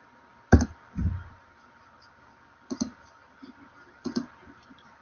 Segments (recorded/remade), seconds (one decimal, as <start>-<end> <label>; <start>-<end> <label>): 0.0-5.0 recorded